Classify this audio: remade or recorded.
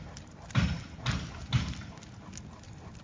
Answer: recorded